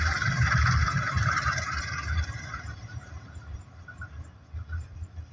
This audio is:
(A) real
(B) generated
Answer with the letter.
B